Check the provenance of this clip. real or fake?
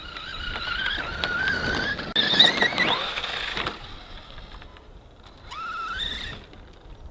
real